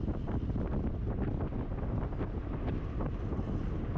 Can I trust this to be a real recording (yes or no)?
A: yes